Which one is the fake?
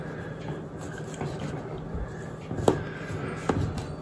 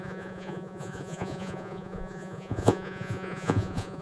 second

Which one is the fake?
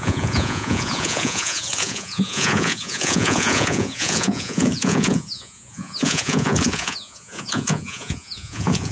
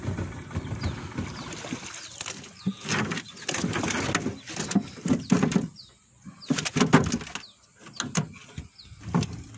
first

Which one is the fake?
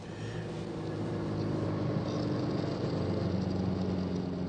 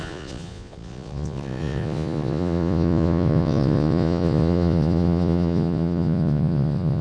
second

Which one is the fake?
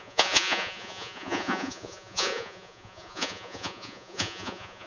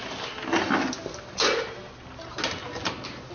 first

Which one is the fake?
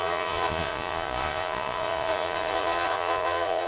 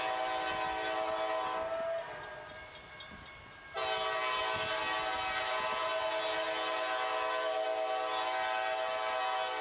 first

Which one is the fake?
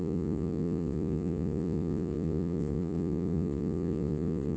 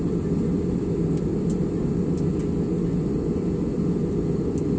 first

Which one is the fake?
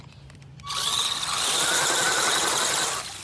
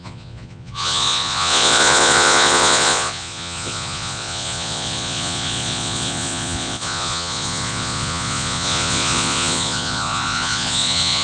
second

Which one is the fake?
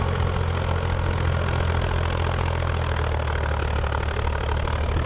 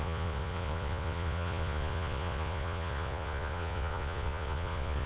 second